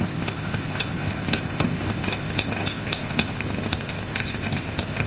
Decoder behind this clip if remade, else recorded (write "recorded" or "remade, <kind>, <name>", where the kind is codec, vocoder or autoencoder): remade, codec, ZipCodec